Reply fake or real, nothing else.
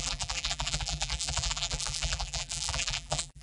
fake